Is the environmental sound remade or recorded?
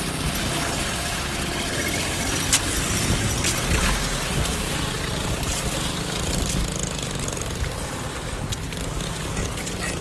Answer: recorded